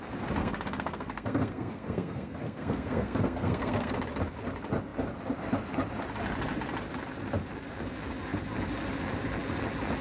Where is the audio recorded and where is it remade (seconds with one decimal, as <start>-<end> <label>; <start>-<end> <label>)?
0.0-0.4 recorded; 0.4-3.9 remade; 3.9-10.0 recorded